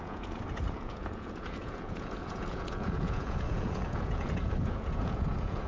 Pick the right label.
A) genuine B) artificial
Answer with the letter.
B